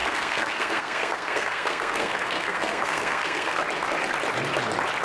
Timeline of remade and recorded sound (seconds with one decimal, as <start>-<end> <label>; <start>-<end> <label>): 0.0-3.6 remade; 3.6-5.0 recorded